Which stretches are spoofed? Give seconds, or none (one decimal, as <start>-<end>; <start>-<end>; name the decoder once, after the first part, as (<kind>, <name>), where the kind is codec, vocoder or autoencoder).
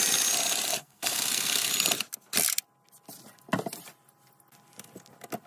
0.7-1.7 (codec, SNAC)